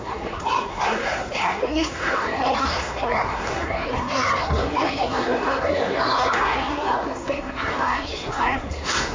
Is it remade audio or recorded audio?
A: remade